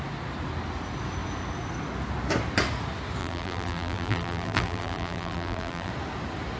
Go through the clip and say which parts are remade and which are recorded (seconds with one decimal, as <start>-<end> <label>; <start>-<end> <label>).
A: 0.0-3.2 recorded; 3.2-5.9 remade; 5.9-6.6 recorded